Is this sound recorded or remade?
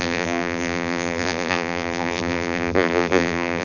remade